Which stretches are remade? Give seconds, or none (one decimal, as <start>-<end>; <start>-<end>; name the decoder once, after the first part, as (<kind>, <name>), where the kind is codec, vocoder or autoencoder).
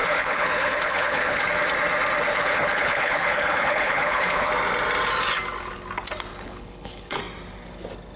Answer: 0.0-1.5 (codec, HILCodec); 2.3-4.5; 6.3-7.2